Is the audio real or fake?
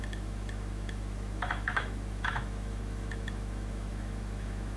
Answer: fake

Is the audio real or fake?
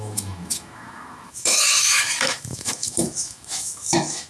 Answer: fake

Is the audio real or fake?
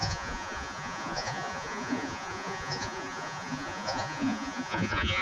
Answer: fake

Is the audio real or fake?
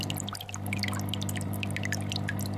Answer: real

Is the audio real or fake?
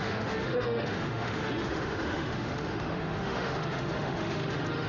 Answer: fake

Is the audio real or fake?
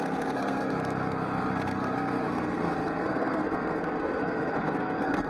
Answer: fake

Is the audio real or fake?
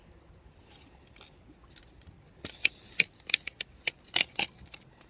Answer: real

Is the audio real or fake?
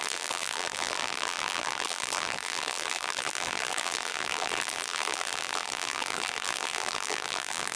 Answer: fake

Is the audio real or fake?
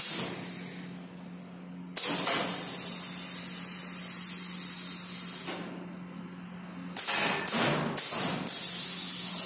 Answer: real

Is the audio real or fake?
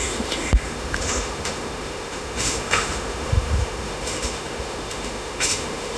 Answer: fake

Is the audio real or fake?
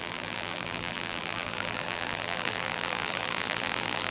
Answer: fake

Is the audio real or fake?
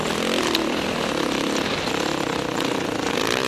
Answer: real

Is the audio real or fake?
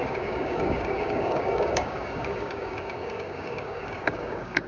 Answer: fake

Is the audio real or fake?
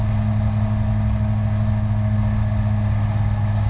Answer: real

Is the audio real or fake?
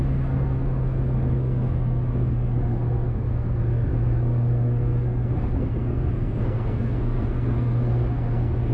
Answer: fake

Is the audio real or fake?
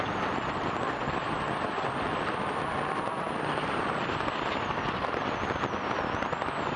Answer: fake